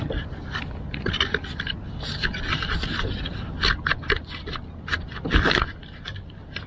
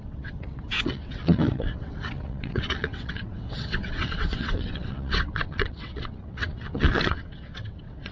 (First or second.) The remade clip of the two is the second